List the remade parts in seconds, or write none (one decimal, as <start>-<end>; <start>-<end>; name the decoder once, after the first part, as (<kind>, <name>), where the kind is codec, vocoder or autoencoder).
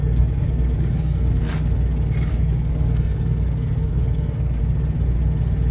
0.0-1.5 (codec, SNAC); 2.3-4.6